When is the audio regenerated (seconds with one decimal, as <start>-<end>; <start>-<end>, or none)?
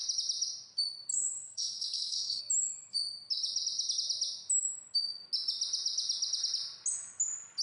1.1-2.4